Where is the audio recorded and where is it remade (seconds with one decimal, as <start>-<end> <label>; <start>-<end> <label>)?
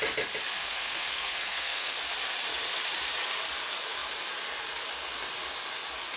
0.0-0.6 recorded; 0.6-2.0 remade; 2.0-6.2 recorded